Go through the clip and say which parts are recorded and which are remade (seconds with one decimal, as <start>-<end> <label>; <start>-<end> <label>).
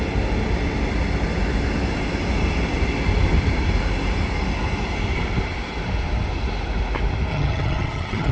0.0-7.3 recorded; 7.3-8.3 remade